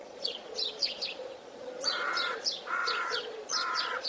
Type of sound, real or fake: fake